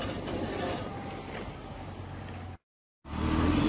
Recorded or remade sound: recorded